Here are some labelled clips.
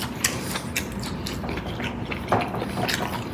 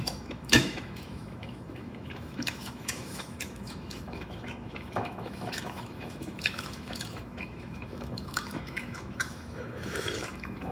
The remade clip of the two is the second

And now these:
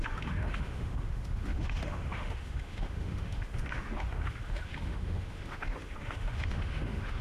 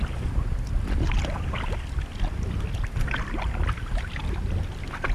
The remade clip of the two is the first